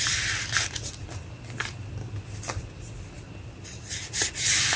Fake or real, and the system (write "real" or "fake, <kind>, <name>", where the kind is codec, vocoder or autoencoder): real